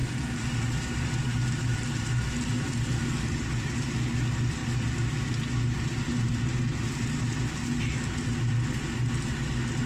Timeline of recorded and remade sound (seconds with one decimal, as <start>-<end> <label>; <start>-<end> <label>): 0.0-9.9 recorded